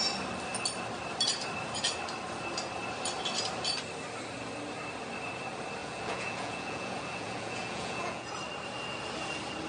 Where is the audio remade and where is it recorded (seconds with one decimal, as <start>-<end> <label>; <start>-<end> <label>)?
0.0-5.8 recorded; 5.8-8.3 remade; 8.3-9.7 recorded